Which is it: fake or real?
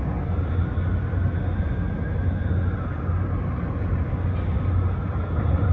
real